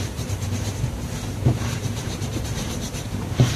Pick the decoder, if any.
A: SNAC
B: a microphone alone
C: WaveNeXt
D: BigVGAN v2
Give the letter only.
D